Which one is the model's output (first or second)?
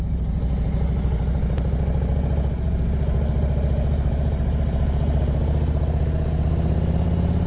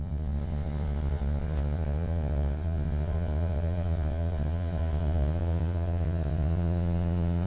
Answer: second